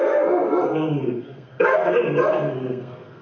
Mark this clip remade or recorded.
remade